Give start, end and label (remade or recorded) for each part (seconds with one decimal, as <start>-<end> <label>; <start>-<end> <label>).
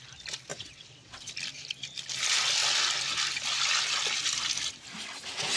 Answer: 0.0-0.5 recorded; 0.5-1.3 remade; 1.3-5.6 recorded